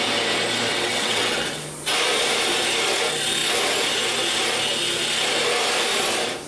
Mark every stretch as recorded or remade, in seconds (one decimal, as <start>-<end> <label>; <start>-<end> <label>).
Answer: 0.0-0.7 recorded; 0.7-1.6 remade; 1.6-6.5 recorded